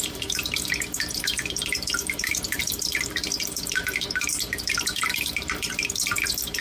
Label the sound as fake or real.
fake